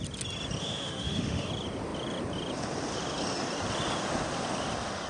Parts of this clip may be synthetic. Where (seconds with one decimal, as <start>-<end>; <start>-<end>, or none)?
0.6-1.5